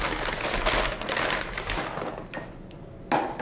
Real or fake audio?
real